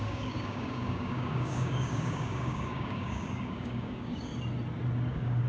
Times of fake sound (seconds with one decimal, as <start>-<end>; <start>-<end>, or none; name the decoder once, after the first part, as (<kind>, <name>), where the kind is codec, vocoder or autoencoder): 0.0-4.3 (codec, DAC); 5.1-5.5